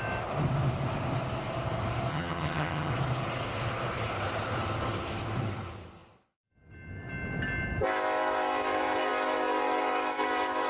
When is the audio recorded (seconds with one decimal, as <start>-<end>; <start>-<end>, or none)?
0.0-2.1; 2.9-10.7